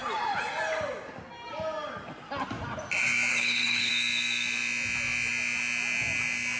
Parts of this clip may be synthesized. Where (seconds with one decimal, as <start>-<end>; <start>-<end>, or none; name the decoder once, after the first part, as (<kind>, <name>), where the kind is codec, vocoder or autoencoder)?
3.3-3.9 (codec, HILCodec)